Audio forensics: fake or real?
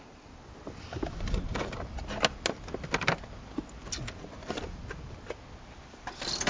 real